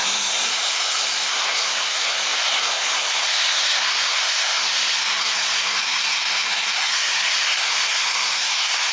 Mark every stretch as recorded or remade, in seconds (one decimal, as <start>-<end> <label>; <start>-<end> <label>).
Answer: 0.0-8.9 remade